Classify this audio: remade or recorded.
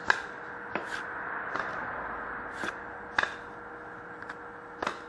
recorded